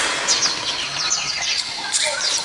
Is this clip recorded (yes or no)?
yes